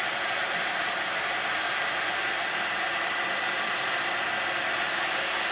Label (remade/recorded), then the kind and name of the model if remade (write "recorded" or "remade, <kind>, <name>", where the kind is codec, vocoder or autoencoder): recorded